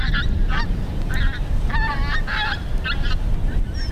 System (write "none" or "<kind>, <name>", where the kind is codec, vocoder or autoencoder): none